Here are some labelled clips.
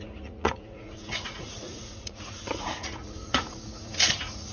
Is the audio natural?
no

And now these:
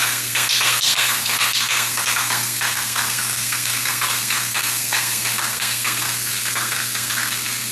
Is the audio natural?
no